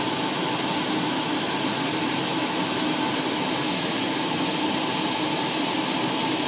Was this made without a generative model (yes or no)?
yes